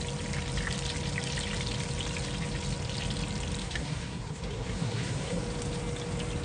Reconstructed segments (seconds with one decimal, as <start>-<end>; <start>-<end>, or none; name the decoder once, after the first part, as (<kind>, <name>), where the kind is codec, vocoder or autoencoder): 3.6-5.4 (codec, SNAC)